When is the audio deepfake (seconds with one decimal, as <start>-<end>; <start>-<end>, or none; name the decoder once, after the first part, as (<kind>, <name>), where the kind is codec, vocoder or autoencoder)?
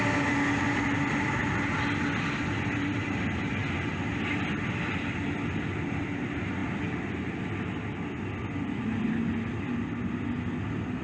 none